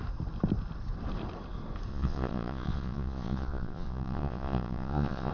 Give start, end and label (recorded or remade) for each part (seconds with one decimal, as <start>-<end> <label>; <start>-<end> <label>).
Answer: 0.0-1.9 recorded; 1.9-5.3 remade